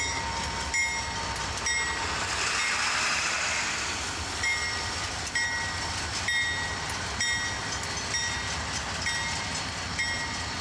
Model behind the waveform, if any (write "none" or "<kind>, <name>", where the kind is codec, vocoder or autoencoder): none